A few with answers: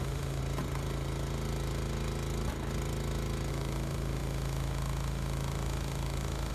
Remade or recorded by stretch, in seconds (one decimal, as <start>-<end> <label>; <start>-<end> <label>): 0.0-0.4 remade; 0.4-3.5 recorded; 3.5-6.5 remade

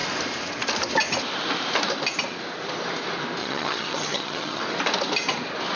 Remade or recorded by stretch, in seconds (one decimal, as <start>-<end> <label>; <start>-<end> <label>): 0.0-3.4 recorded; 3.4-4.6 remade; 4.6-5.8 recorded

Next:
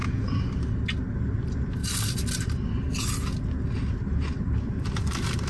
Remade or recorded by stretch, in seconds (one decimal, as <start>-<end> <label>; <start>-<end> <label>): 0.0-0.5 remade; 0.5-5.5 recorded